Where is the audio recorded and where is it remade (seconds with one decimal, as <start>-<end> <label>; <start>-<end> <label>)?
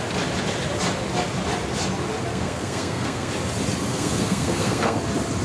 0.0-2.3 recorded; 2.3-3.3 remade; 3.3-3.9 recorded; 3.9-5.0 remade; 5.0-5.4 recorded